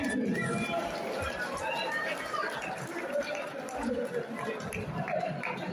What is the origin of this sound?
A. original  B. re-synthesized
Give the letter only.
B